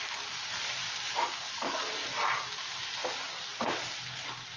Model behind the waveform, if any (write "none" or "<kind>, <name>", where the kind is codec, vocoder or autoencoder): none